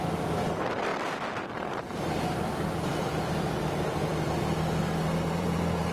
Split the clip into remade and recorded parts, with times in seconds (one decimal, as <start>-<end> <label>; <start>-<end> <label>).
0.0-5.9 remade